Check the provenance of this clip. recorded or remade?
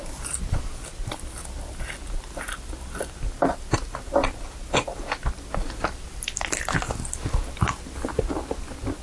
recorded